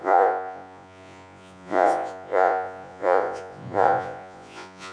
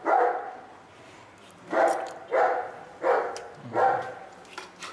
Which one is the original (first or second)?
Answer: second